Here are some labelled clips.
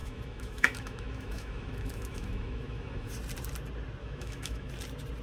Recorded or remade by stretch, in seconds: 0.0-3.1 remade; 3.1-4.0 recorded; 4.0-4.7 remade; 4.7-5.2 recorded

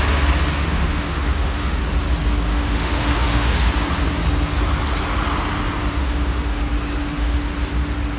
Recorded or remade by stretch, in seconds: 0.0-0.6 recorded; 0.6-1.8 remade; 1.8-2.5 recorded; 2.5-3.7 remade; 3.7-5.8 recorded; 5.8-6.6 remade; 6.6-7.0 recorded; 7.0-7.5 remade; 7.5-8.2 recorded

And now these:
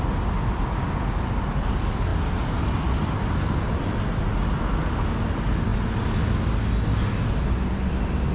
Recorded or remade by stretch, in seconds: 0.0-8.3 recorded

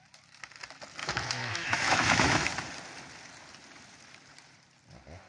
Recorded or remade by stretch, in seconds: 0.0-1.0 recorded; 1.0-2.5 remade; 2.5-5.3 recorded

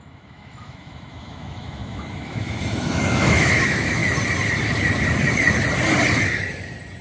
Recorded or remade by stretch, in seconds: 0.0-4.0 remade; 4.0-7.0 recorded

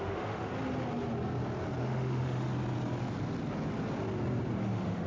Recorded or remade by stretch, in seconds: 0.0-0.5 remade; 0.5-1.8 recorded; 1.8-2.5 remade; 2.5-4.6 recorded; 4.6-5.1 remade

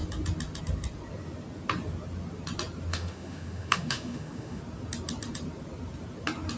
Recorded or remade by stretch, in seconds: 0.0-2.9 recorded; 2.9-4.6 remade; 4.6-6.6 recorded

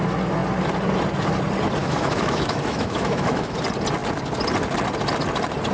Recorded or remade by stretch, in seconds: 0.0-1.8 recorded; 1.8-3.6 remade; 3.6-5.7 recorded